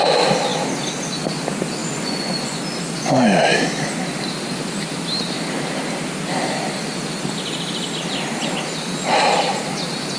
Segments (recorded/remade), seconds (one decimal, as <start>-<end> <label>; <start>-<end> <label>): 0.0-1.8 recorded; 1.8-2.6 remade; 2.6-10.2 recorded